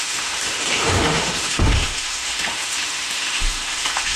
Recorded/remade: remade